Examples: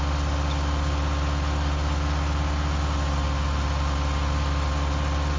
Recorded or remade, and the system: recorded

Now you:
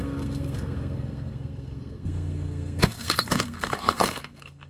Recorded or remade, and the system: remade, codec, SNAC